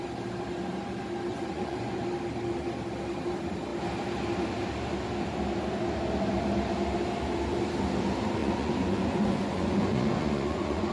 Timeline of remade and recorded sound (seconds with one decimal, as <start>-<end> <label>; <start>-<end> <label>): 0.0-1.3 recorded; 1.3-2.0 remade; 2.0-8.4 recorded; 8.4-10.9 remade